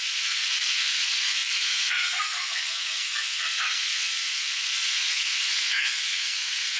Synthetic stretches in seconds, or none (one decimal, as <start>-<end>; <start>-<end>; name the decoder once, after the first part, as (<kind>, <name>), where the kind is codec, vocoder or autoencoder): 0.0-6.8 (codec, SNAC)